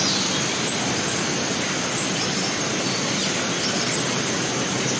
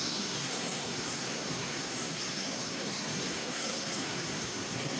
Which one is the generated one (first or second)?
second